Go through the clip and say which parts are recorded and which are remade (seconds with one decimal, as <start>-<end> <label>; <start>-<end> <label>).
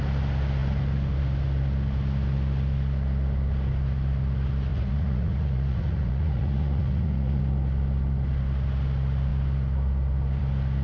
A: 0.0-4.7 recorded; 4.7-7.4 remade; 7.4-10.8 recorded